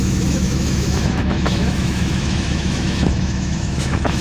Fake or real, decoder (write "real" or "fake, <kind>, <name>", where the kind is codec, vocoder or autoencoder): fake, autoencoder, DAC-VAE